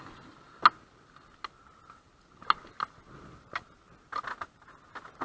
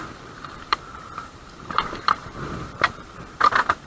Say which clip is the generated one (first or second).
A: second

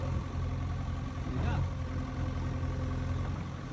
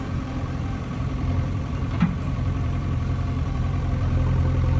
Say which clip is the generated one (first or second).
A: second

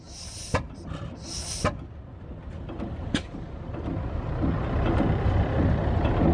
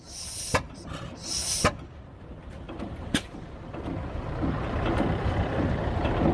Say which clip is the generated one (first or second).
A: second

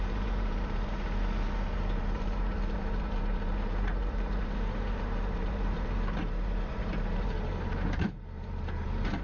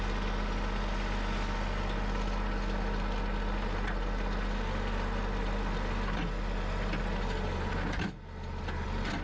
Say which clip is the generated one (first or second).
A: first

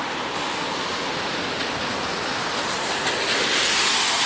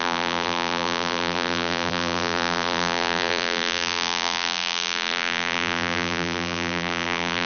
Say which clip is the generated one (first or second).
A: second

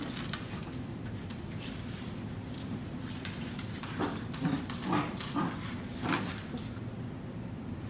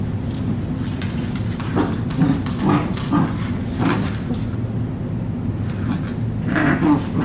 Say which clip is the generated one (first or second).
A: first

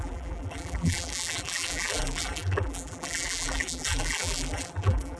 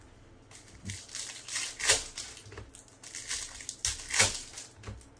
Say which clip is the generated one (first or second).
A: first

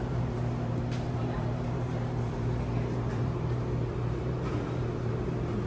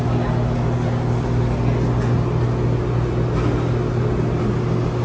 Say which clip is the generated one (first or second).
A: first